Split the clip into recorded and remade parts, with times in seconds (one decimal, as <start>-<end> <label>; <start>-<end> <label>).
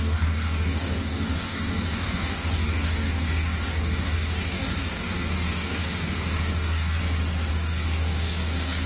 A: 0.0-7.0 remade; 7.0-7.5 recorded; 7.5-8.9 remade